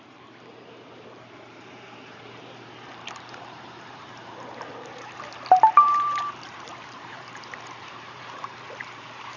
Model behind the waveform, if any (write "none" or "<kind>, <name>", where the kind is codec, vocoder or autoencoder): vocoder, BigVGAN v2